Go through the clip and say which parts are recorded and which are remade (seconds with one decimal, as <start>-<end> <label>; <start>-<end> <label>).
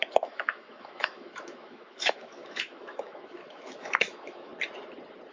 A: 0.0-4.5 remade; 4.5-5.3 recorded